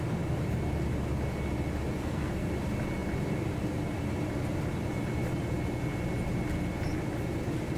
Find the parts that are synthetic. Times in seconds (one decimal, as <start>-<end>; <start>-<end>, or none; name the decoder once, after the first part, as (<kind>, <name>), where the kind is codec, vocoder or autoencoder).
2.0-2.5 (codec, SNAC)